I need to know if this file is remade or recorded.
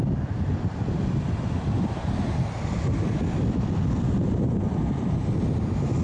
recorded